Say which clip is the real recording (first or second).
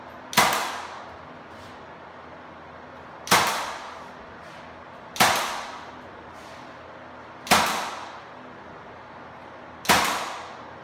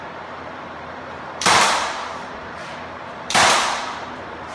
first